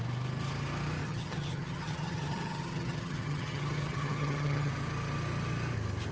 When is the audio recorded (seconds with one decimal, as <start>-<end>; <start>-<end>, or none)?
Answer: 0.0-1.0; 4.7-6.1